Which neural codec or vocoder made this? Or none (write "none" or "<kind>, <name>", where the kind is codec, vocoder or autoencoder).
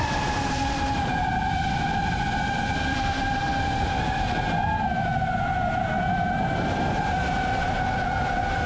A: vocoder, BigVGAN v2